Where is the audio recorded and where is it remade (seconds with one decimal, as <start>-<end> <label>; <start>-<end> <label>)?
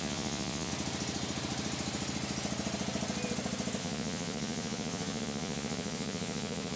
0.0-0.7 remade; 0.7-3.8 recorded; 3.8-6.8 remade